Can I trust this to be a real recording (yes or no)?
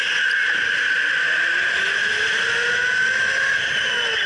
yes